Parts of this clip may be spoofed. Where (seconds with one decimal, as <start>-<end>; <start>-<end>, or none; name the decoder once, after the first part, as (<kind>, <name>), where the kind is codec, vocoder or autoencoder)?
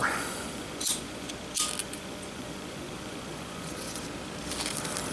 0.0-1.3 (vocoder, Vocos); 1.8-4.0